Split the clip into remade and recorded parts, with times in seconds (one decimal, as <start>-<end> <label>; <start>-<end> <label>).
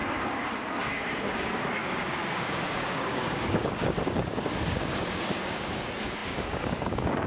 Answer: 0.0-0.8 recorded; 0.8-7.3 remade